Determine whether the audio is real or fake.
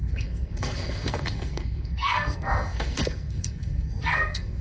fake